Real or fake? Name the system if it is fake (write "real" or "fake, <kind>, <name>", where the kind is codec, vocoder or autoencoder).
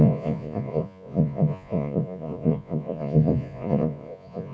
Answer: fake, vocoder, Vocos